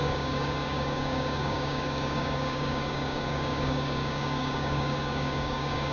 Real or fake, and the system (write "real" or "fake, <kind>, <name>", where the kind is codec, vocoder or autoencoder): fake, codec, DAC